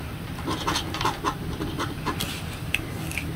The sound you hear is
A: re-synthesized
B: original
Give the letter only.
B